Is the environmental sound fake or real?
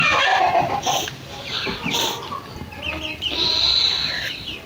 real